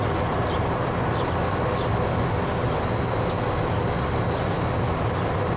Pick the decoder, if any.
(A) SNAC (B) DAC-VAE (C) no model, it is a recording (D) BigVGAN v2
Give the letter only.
C